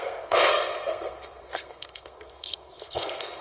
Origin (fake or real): fake